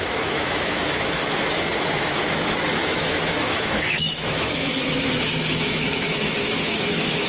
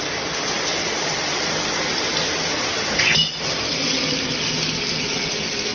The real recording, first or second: second